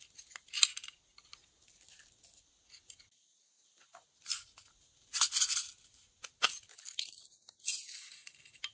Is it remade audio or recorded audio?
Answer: recorded